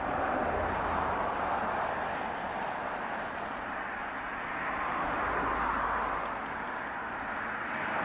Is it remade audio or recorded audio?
recorded